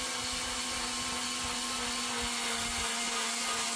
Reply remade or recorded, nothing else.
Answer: recorded